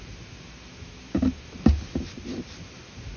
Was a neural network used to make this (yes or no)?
no